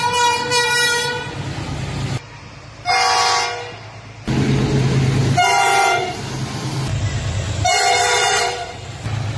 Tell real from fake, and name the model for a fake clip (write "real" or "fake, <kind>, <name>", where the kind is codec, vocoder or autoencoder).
real